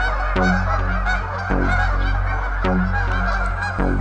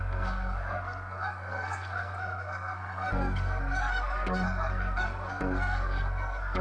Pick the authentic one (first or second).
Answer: first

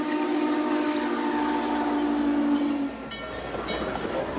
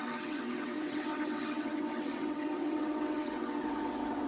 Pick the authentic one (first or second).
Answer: first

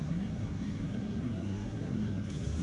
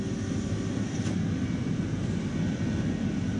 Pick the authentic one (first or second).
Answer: second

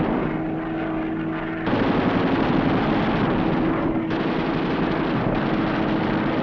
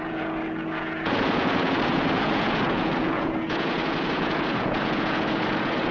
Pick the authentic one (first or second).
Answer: first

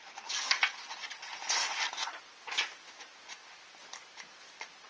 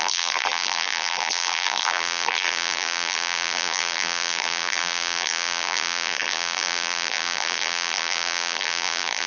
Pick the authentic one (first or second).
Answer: first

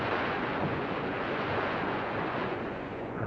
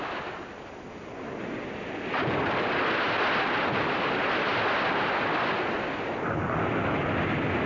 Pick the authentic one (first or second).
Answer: second